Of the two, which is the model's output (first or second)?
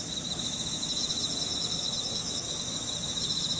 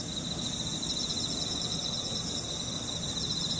first